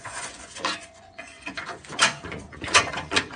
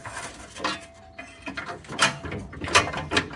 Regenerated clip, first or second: first